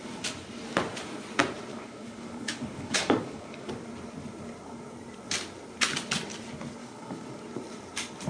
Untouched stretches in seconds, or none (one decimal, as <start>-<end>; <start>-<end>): 0.0-1.7; 3.7-6.8; 7.4-8.3